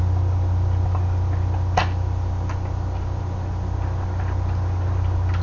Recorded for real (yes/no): yes